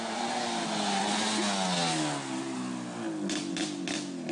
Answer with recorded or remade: recorded